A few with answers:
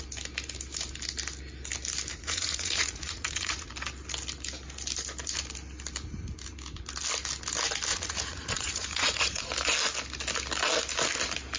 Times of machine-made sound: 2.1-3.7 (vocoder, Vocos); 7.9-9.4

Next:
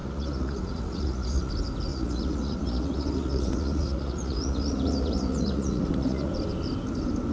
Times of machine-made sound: 0.0-1.5 (vocoder, Vocos); 1.9-6.3

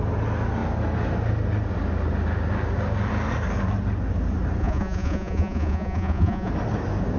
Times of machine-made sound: 4.6-6.5 (vocoder, Vocos)

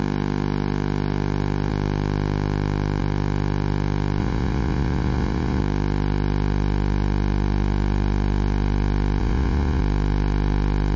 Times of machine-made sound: 4.2-5.6 (vocoder, Vocos); 9.2-9.8

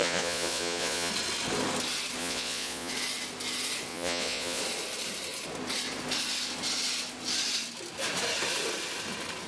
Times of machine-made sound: 0.0-1.1 (vocoder, Vocos); 2.2-2.9; 3.9-4.6

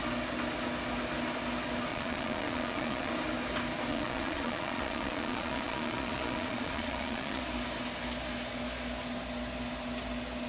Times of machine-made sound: 1.9-3.1 (vocoder, Vocos); 3.9-7.4

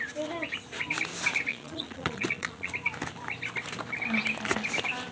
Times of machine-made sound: 1.5-2.7 (vocoder, Vocos)